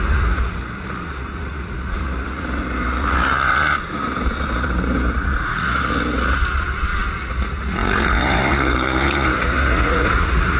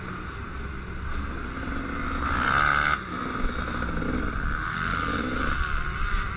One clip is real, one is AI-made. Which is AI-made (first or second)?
first